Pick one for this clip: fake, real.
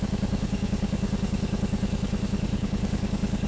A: fake